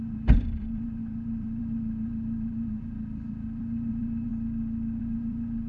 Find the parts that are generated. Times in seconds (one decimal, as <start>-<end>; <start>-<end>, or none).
0.0-4.3; 5.0-5.7